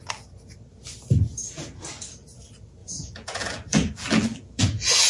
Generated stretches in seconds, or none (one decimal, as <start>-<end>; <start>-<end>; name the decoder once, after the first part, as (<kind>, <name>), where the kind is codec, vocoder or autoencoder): 1.3-1.8 (vocoder, BigVGAN v2); 2.8-5.1